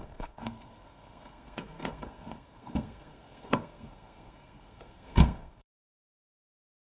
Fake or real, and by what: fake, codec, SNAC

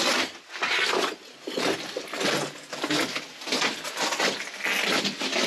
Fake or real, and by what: real